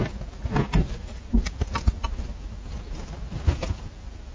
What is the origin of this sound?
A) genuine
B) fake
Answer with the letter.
B